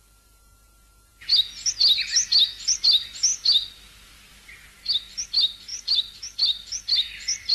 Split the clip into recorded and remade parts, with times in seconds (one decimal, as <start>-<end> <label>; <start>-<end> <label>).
0.0-5.7 recorded; 5.7-6.7 remade; 6.7-7.5 recorded